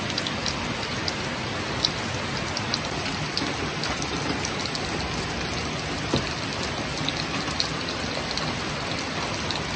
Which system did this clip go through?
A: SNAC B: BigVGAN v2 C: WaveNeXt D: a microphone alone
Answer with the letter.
D